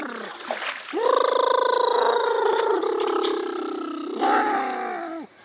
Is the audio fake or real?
real